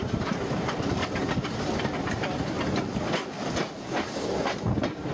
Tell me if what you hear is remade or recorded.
recorded